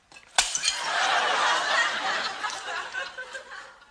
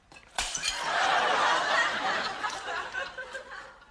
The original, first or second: first